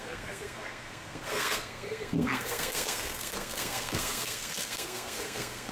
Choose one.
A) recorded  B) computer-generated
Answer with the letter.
B